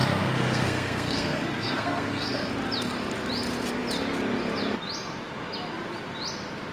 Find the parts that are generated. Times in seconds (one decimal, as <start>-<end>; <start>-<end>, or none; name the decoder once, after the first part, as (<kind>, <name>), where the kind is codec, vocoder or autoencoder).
0.0-2.5 (codec, SNAC)

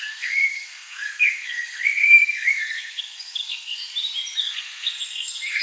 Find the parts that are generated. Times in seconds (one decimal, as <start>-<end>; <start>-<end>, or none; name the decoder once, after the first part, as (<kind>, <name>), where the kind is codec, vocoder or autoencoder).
0.0-3.8 (codec, SNAC); 4.4-5.6

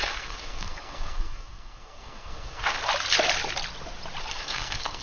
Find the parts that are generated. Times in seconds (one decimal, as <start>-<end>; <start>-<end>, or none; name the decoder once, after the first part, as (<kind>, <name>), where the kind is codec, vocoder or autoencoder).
0.0-2.8 (codec, SNAC); 4.2-5.0

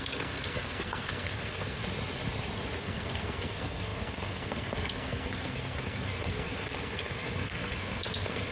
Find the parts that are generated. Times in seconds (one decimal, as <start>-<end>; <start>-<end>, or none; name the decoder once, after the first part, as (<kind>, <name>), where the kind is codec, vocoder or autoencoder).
0.0-1.8 (codec, SNAC); 2.8-8.5

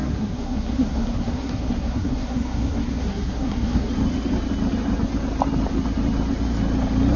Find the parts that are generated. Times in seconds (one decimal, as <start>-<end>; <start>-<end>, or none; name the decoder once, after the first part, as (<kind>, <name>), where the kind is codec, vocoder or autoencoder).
0.0-3.9 (codec, SNAC)

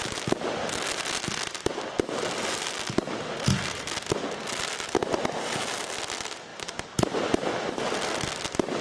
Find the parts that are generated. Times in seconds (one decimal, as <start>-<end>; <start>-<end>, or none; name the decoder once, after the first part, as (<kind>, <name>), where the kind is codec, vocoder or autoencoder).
none